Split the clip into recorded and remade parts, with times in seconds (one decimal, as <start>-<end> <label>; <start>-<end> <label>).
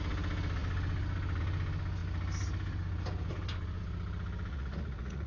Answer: 0.0-4.5 recorded; 4.5-5.3 remade